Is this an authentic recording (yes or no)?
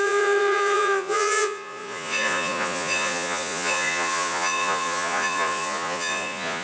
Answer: no